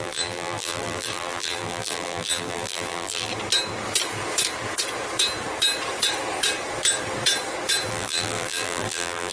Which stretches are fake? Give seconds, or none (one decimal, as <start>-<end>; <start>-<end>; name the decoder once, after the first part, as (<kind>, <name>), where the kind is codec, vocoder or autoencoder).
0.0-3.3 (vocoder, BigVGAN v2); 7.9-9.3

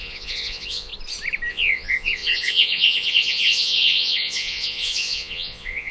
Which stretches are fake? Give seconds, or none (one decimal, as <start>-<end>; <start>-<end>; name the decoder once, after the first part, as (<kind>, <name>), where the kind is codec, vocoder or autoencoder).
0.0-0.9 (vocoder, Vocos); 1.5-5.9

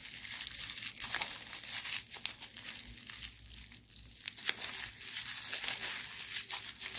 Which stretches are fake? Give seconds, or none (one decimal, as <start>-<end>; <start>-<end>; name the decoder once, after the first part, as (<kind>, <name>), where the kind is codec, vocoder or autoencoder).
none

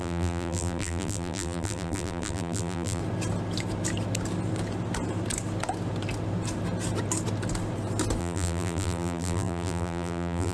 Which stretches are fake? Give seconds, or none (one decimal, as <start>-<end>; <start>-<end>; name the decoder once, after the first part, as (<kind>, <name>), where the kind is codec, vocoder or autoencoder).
0.0-3.0 (vocoder, BigVGAN v2); 8.2-10.5